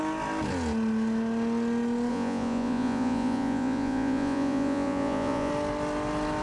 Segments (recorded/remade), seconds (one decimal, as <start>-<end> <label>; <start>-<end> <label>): 0.0-2.1 recorded; 2.1-5.5 remade; 5.5-6.4 recorded